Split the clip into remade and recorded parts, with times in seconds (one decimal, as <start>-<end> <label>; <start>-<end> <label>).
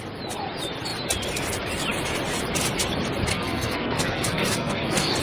0.0-3.3 recorded; 3.3-5.2 remade